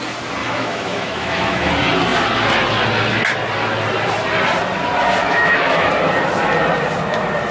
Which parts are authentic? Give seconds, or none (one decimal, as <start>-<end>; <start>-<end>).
0.0-0.4; 1.7-5.2; 5.9-7.5